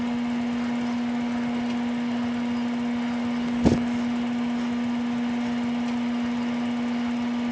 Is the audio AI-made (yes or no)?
no